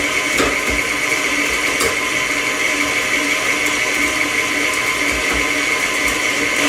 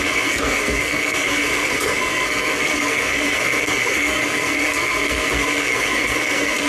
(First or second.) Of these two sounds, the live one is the first